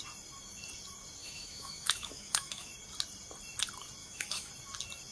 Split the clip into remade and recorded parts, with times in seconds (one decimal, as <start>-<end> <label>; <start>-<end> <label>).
0.0-1.2 recorded; 1.2-2.7 remade; 2.7-4.0 recorded; 4.0-4.5 remade; 4.5-5.1 recorded